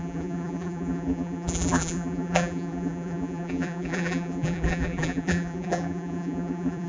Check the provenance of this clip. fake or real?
fake